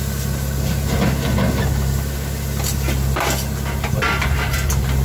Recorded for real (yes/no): yes